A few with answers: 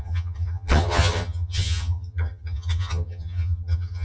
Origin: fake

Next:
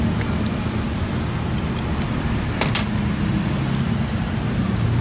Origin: real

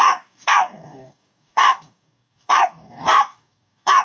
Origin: fake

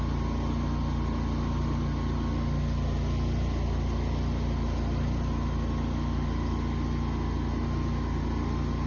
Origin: real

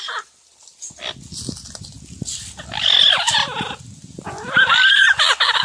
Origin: real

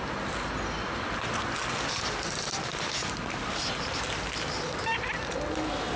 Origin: real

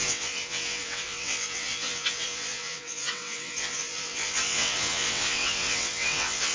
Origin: fake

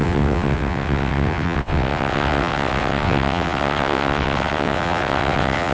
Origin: fake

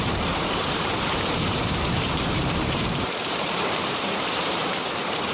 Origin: fake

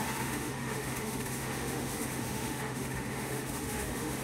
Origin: fake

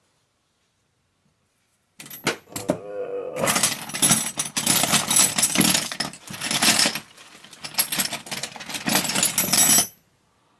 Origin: real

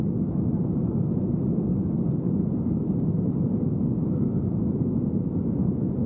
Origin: real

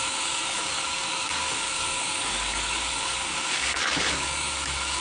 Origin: fake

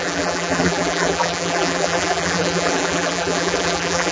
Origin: fake